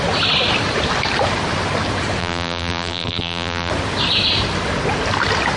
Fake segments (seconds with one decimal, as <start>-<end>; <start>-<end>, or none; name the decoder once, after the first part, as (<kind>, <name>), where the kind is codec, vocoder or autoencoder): 2.2-3.7 (vocoder, BigVGAN v2)

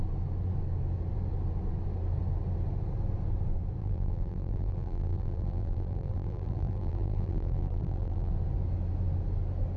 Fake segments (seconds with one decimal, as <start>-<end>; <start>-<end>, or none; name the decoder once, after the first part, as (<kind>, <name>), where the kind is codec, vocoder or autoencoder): 3.8-8.3 (vocoder, BigVGAN v2)

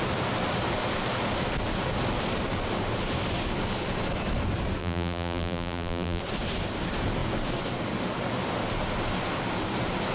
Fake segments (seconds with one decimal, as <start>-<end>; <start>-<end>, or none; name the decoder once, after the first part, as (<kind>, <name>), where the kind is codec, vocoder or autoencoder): 4.8-6.2 (vocoder, BigVGAN v2)

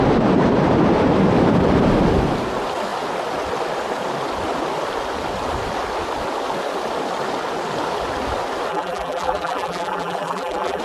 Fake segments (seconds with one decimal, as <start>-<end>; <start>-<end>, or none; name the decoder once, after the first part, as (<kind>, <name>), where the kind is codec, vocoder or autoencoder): 8.7-10.8 (vocoder, BigVGAN v2)

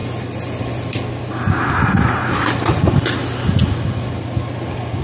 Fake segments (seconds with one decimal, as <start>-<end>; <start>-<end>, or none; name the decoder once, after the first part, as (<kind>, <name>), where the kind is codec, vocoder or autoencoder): 2.2-2.8 (vocoder, BigVGAN v2)

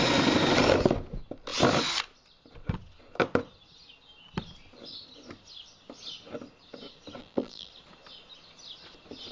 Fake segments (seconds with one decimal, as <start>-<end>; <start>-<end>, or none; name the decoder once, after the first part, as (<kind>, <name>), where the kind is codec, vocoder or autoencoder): 7.2-7.7 (vocoder, BigVGAN v2)

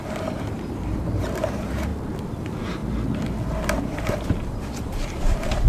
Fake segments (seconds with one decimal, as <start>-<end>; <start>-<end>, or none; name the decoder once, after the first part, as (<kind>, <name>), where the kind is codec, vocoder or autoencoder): 0.0-1.9 (vocoder, BigVGAN v2); 2.4-2.8; 3.8-5.7

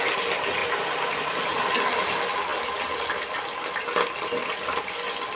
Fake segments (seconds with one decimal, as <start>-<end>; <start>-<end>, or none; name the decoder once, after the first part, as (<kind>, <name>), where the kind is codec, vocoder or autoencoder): 0.6-1.3 (vocoder, BigVGAN v2)